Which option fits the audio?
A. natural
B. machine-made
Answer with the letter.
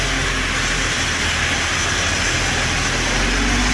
A